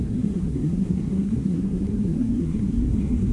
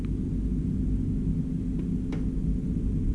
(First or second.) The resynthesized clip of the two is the first